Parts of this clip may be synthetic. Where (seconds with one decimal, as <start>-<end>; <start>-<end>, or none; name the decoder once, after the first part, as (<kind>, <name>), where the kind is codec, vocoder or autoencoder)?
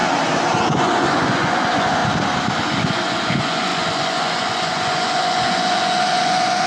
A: 0.6-2.0 (vocoder, Vocos); 2.8-6.7